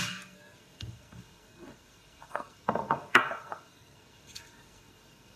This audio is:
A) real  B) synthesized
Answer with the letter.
B